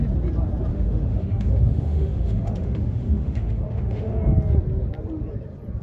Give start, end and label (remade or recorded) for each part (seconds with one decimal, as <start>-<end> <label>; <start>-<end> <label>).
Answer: 0.0-0.7 recorded; 0.7-4.2 remade; 4.2-5.8 recorded